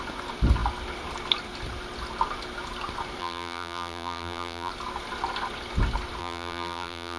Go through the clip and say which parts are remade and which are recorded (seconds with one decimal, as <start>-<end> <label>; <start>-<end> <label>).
0.0-3.2 recorded; 3.2-4.7 remade; 4.7-6.2 recorded; 6.2-7.2 remade